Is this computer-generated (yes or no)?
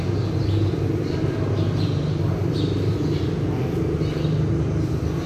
no